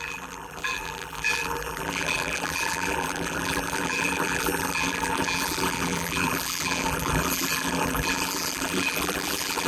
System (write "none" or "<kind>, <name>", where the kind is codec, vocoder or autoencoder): vocoder, BigVGAN v2